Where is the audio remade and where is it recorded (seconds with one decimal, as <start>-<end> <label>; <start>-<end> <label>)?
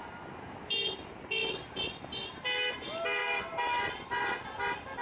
0.0-5.0 recorded